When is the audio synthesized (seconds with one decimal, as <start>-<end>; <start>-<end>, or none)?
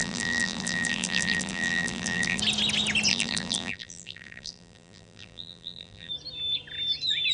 0.0-2.4; 3.1-6.1